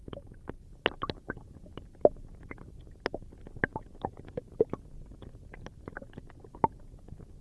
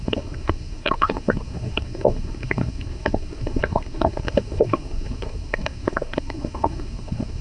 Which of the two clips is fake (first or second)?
second